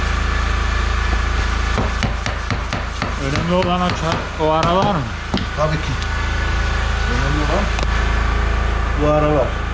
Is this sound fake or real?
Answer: real